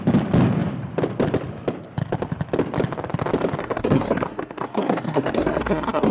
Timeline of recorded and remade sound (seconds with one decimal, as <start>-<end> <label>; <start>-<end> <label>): 0.0-3.6 recorded; 3.6-6.1 remade